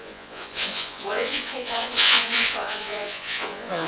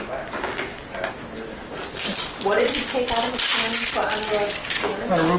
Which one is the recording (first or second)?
second